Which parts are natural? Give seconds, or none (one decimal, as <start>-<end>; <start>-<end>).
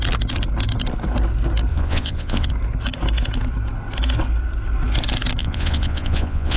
0.0-1.7; 2.5-5.4